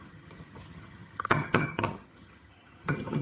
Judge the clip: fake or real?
fake